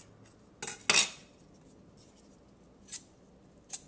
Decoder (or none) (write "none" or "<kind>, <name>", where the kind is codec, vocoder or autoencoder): none